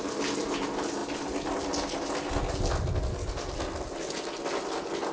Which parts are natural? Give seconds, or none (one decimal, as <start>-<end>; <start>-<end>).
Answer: 0.0-5.1